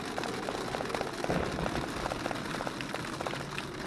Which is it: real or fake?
real